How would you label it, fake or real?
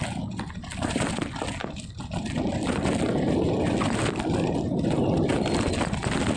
fake